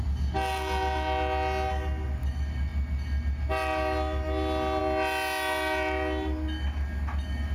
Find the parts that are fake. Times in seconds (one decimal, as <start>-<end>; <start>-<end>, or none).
none